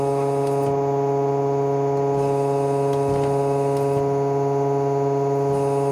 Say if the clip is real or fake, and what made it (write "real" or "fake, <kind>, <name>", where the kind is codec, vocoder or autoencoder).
real